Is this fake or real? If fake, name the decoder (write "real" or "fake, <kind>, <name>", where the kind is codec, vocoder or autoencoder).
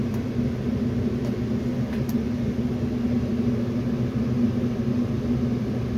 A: real